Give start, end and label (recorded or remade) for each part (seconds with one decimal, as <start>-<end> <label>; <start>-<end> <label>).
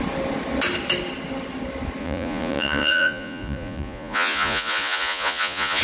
0.0-2.0 recorded; 2.0-5.8 remade